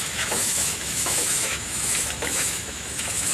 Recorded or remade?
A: remade